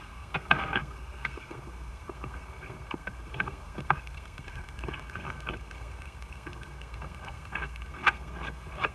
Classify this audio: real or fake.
fake